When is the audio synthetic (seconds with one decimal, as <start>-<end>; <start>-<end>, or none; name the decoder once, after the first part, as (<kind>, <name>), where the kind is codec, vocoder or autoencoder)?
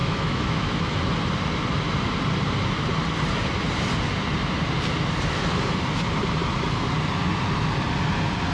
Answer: 0.0-1.0 (autoencoder, DAC-VAE)